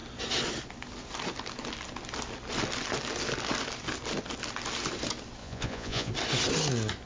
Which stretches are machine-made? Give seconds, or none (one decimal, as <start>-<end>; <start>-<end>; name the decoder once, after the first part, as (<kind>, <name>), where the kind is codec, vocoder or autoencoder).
5.4-6.1 (vocoder, Vocos)